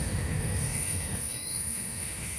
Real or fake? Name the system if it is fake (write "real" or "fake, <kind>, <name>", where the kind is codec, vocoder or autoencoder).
fake, autoencoder, DAC-VAE